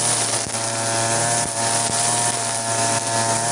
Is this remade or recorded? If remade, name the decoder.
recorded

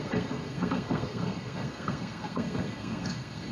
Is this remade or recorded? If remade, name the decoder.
remade, codec, SNAC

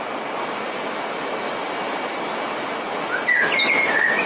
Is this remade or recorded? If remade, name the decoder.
recorded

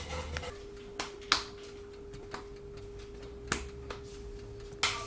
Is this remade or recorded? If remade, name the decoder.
recorded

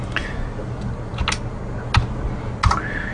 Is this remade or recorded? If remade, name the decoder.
recorded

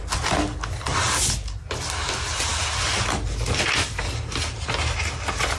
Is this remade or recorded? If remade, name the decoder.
recorded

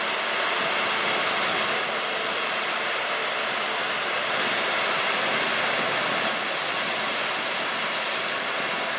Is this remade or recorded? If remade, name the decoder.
recorded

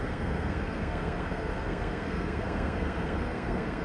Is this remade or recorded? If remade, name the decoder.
remade, codec, SNAC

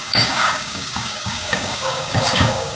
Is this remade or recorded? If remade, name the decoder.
remade, codec, DAC